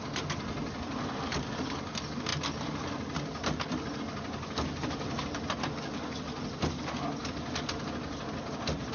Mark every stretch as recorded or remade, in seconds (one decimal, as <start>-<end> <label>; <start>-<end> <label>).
0.0-8.9 recorded